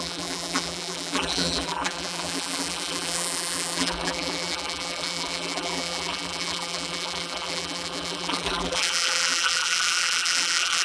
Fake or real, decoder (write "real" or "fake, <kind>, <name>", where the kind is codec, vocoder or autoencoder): fake, vocoder, BigVGAN v2